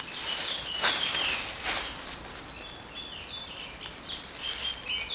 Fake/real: real